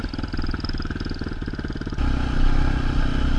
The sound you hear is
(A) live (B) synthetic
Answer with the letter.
A